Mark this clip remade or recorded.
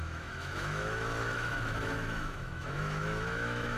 remade